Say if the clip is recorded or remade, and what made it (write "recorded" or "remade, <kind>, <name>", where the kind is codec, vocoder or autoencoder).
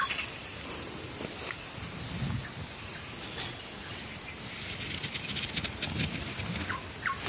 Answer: recorded